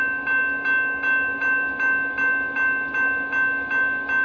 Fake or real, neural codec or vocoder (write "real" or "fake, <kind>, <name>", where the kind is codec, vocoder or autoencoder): real